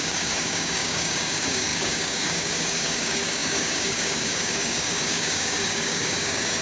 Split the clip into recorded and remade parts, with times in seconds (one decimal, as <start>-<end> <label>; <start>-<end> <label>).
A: 0.0-6.6 remade